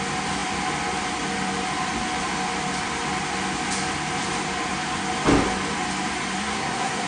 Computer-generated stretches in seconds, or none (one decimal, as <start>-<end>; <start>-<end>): 6.4-7.1